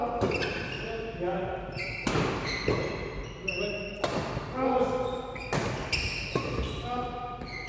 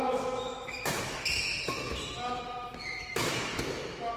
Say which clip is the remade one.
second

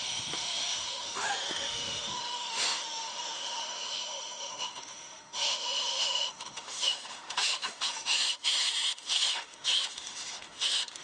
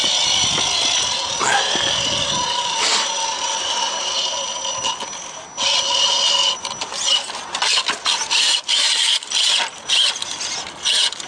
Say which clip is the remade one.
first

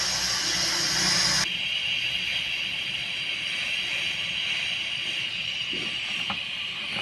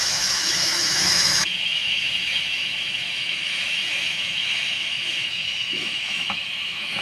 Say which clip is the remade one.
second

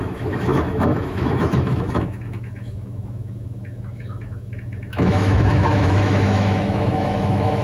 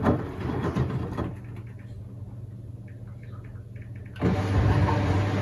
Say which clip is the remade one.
first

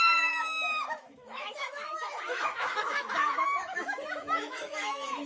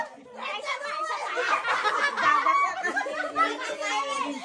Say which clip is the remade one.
first